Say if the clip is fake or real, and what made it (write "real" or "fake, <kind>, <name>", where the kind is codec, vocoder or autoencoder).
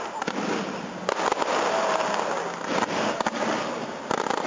real